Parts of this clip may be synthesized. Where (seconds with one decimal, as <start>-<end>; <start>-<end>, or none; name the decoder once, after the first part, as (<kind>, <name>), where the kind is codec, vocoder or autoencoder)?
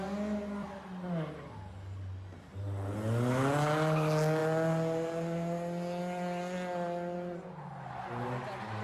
none